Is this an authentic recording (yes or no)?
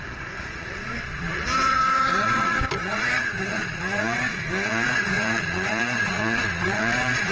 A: no